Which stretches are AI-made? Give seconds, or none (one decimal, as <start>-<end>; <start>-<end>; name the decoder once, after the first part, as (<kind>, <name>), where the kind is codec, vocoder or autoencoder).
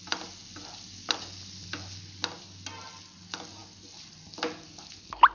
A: none